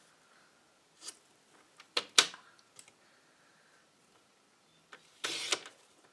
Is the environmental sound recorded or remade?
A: recorded